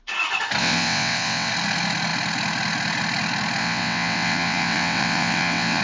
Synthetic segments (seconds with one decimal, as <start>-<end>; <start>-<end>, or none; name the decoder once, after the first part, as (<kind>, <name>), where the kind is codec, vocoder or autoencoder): 0.6-1.5 (vocoder, WaveNeXt); 3.6-5.8